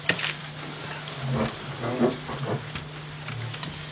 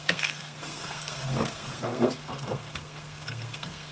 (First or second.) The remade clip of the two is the second